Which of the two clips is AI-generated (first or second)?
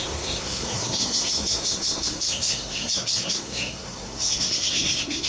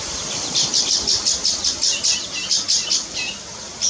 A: first